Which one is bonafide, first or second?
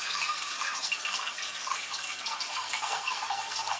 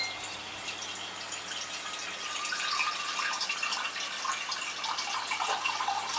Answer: second